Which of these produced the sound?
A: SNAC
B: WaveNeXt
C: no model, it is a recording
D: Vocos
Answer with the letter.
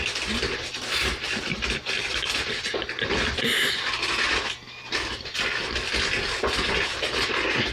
C